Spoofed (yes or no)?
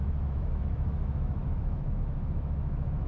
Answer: yes